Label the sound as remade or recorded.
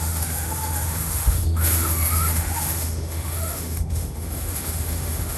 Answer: remade